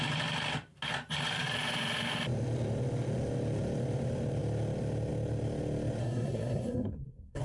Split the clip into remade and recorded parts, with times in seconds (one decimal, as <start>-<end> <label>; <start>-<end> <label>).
0.0-6.0 recorded; 6.0-7.4 remade